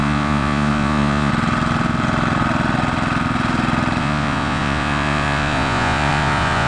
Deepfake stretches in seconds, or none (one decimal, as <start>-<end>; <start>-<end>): 0.0-1.3; 4.0-6.7